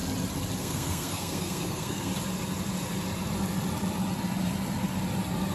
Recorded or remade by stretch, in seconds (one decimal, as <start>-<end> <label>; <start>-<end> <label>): 0.0-0.6 recorded; 0.6-2.1 remade; 2.1-5.5 recorded